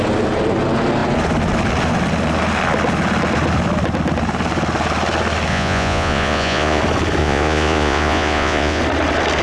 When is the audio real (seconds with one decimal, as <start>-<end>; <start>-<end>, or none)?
0.0-5.5; 6.8-7.2; 8.8-9.4